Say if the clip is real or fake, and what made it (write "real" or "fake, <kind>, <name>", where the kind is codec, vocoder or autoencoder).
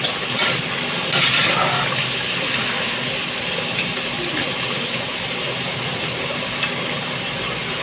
real